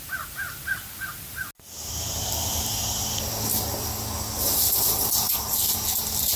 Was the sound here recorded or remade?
recorded